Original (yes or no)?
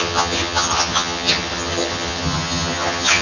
no